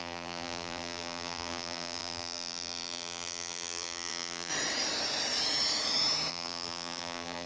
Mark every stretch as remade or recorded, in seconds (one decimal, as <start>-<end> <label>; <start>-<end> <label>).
0.0-4.5 remade; 4.5-6.3 recorded; 6.3-7.5 remade